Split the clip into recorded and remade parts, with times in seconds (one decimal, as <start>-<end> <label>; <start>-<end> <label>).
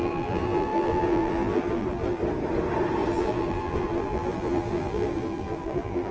0.0-2.2 remade; 2.2-3.1 recorded; 3.1-6.1 remade